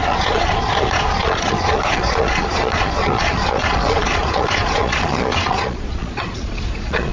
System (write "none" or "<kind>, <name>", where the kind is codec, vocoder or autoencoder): vocoder, Vocos